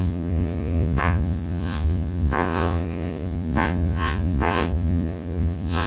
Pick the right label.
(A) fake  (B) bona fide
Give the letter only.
A